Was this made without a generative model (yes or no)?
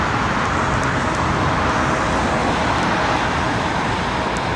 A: yes